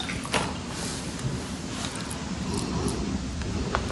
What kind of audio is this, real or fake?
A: real